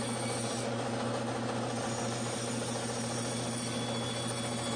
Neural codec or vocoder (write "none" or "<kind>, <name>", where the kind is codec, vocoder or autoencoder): none